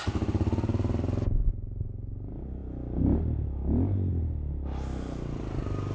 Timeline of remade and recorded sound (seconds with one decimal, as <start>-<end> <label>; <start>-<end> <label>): 0.0-5.9 recorded